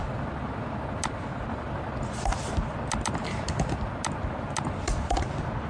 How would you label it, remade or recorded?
recorded